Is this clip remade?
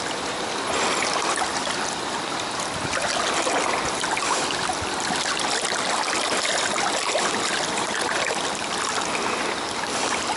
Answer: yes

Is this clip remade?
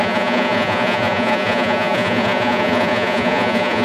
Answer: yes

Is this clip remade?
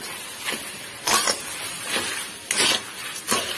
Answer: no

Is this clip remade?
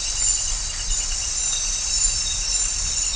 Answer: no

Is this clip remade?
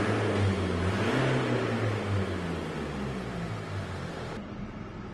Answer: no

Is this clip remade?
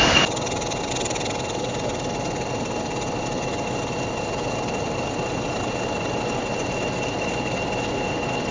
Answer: no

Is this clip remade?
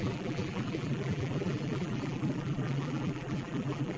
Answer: yes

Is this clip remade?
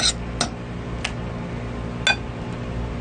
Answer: no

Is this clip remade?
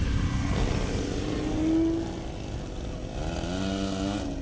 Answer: no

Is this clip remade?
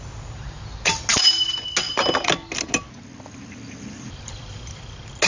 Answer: no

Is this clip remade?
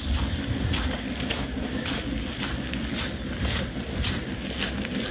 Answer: no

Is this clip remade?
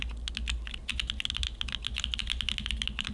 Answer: no